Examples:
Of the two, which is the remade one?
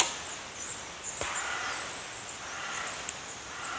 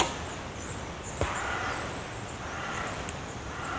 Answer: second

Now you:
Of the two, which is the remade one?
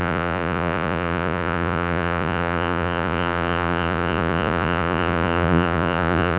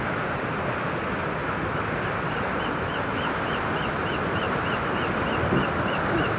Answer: first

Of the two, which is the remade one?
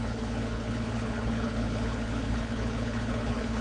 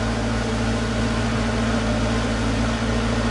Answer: first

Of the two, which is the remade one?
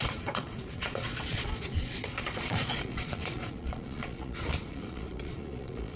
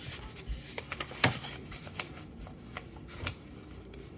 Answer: first